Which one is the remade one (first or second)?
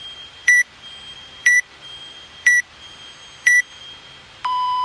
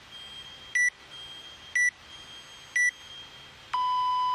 first